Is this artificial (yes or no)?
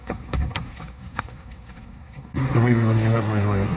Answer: yes